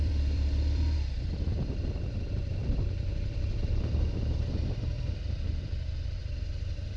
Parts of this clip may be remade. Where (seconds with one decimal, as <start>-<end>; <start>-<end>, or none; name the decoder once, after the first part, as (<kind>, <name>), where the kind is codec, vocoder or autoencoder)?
0.0-2.6 (vocoder, BigVGAN v2); 4.5-7.0